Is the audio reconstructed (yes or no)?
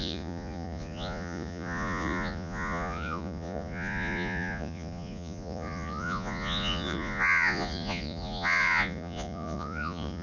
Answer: yes